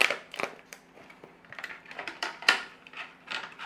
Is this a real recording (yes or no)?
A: no